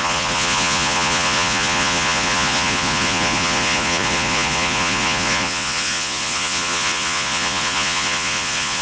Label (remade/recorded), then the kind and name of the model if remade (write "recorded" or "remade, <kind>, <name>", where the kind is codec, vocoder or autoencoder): remade, vocoder, Vocos